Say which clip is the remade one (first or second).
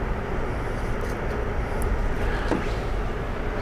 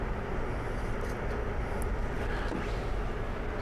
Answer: first